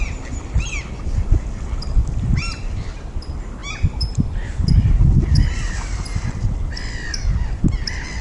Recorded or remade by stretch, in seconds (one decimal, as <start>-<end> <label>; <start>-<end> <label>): 0.0-3.6 recorded; 3.6-6.4 remade; 6.4-8.2 recorded